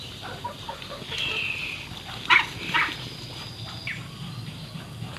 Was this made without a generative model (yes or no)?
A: yes